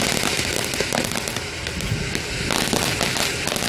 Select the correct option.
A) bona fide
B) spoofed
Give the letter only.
A